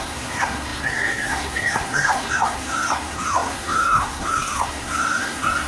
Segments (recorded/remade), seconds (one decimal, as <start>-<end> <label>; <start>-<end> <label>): 0.0-5.7 remade